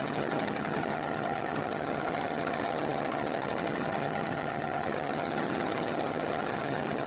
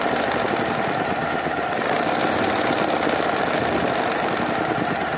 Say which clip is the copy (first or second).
first